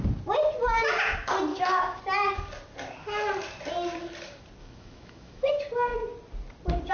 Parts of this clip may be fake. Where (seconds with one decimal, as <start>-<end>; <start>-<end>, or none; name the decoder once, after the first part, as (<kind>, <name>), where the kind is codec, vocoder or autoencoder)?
1.5-2.0 (autoencoder, DAC-VAE); 4.6-5.5